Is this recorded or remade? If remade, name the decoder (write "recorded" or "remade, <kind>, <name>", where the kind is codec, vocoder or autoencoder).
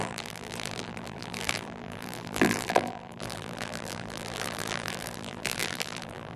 remade, vocoder, BigVGAN v2